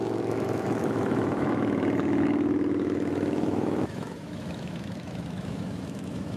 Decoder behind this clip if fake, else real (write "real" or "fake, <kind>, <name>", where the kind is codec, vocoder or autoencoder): fake, autoencoder, DAC-VAE